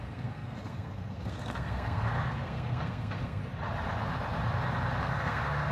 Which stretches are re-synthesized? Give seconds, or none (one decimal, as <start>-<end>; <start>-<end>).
0.0-3.4; 5.0-5.7